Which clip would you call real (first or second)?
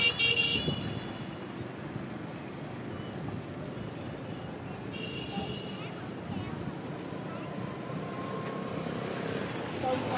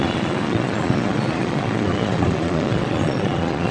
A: first